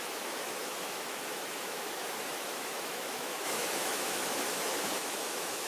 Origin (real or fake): fake